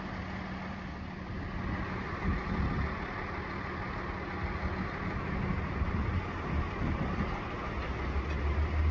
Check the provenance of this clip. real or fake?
real